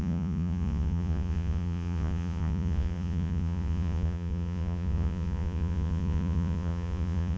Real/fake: fake